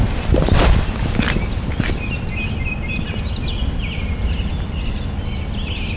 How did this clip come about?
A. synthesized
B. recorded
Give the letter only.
B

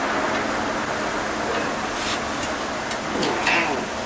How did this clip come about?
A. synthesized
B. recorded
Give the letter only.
B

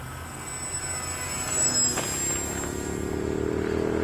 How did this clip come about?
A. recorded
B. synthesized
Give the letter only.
A